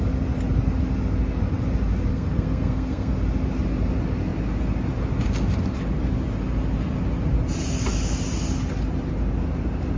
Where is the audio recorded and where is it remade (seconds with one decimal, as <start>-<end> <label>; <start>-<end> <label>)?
0.0-2.1 recorded; 2.1-3.1 remade; 3.1-10.0 recorded